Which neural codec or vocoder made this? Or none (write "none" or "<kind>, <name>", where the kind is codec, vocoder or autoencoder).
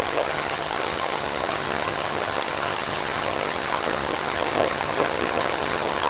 vocoder, HiFi-GAN